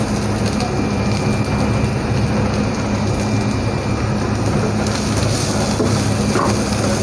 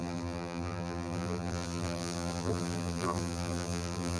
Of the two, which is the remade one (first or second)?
second